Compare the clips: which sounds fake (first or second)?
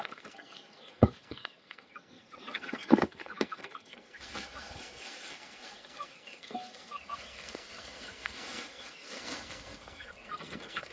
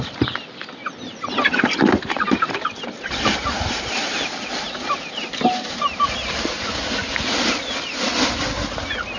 first